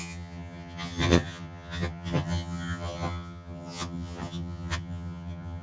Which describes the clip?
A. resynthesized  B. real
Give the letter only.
A